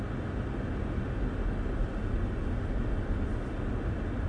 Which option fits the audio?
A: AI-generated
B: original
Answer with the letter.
B